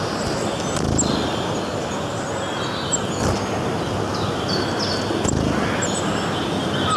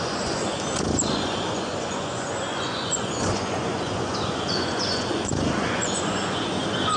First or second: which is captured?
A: first